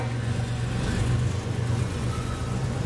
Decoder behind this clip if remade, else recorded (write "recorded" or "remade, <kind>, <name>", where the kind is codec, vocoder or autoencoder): remade, vocoder, Vocos